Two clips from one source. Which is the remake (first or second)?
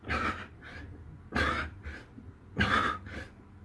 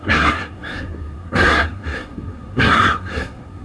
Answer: second